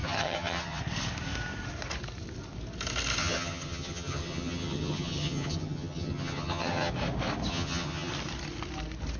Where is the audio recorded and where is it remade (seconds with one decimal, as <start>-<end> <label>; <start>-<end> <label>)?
0.0-0.8 remade; 0.8-3.2 recorded; 3.2-6.9 remade; 6.9-7.5 recorded; 7.5-8.1 remade; 8.1-9.2 recorded